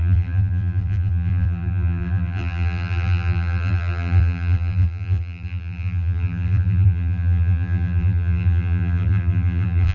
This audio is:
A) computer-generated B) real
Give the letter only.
A